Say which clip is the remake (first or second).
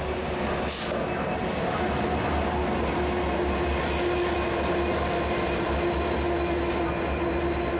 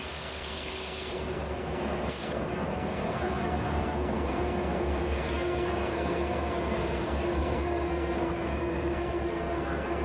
second